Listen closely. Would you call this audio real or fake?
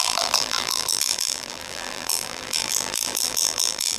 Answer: fake